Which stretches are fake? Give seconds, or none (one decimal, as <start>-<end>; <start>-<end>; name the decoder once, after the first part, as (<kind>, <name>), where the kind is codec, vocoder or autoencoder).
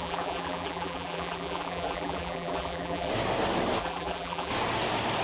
0.0-3.1 (vocoder, BigVGAN v2); 3.8-4.5